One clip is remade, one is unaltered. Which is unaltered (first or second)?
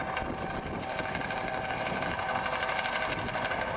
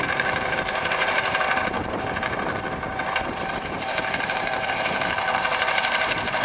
first